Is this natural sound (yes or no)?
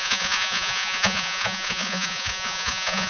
no